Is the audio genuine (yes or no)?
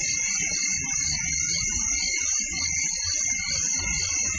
yes